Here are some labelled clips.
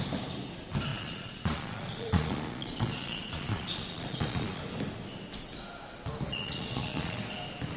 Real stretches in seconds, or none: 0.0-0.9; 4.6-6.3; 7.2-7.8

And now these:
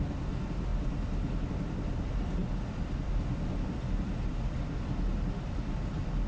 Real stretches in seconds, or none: 0.0-6.3

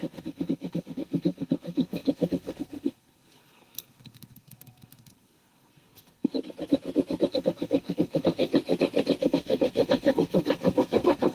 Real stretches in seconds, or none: 6.3-7.3; 8.5-9.2

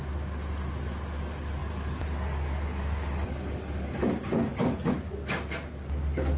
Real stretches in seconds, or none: 0.0-1.6; 4.9-6.4

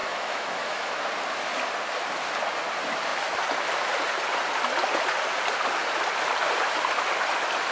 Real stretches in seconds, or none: 1.0-7.7

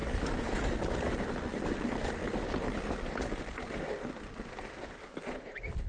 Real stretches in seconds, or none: 0.0-5.9

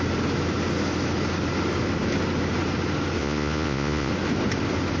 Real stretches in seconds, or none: 0.0-3.2; 4.1-5.0

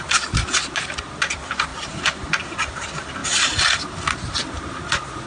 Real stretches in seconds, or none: 0.0-1.7; 2.3-3.2; 3.9-5.3